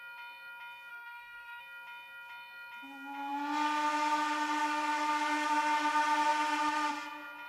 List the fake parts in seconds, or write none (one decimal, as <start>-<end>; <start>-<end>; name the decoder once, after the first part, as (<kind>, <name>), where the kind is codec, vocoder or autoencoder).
0.9-1.6 (codec, SNAC)